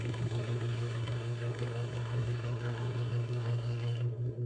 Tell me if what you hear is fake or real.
fake